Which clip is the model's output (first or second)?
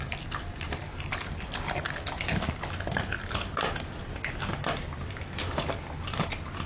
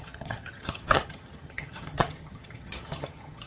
second